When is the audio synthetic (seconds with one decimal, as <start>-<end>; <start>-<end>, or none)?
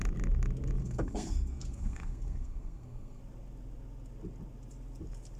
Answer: 0.8-3.2